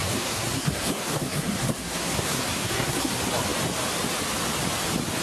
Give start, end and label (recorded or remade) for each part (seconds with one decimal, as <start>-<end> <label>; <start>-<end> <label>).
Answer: 0.0-3.1 remade; 3.1-5.2 recorded